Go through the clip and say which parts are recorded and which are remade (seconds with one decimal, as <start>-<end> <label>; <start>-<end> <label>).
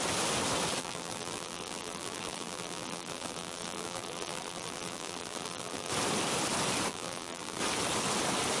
0.0-0.8 recorded; 0.8-5.9 remade; 5.9-6.9 recorded; 6.9-7.6 remade; 7.6-8.6 recorded